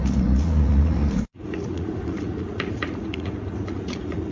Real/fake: fake